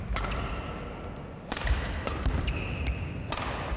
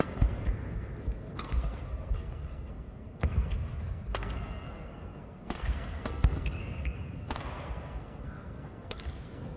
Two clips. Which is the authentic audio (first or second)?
first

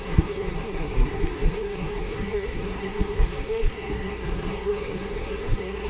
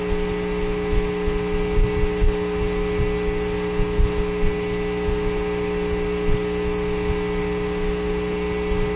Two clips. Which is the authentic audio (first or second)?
second